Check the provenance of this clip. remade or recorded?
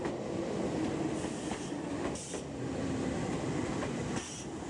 recorded